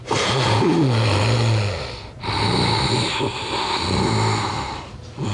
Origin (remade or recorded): recorded